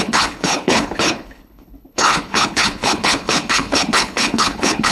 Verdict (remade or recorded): remade